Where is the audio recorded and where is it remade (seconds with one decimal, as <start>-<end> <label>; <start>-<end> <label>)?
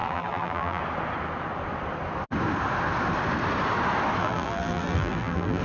0.0-0.8 remade; 0.8-4.2 recorded; 4.2-5.6 remade